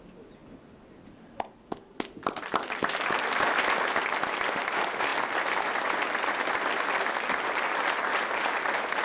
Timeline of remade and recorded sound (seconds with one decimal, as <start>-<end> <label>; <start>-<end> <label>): 0.0-9.0 recorded